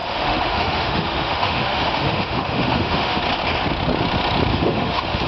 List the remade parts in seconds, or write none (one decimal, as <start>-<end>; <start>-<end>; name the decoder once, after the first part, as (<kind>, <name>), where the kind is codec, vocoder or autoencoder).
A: 0.0-3.2 (autoencoder, DAC-VAE); 4.5-5.3